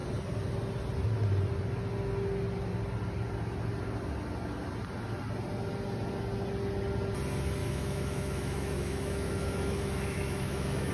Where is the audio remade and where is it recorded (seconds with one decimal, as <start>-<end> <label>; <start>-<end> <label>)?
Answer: 0.0-7.6 recorded; 7.6-10.9 remade